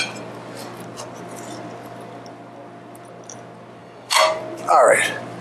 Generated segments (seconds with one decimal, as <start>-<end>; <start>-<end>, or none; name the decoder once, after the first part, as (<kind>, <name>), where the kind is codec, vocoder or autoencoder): 3.8-4.4 (codec, DAC)